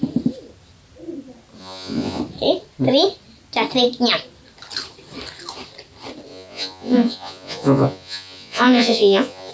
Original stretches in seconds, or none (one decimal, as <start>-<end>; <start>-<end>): 0.0-1.6; 2.2-6.3